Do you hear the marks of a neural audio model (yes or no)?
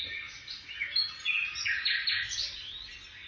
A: no